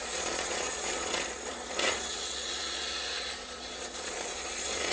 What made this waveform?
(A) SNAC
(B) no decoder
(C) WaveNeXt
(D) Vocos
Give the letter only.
D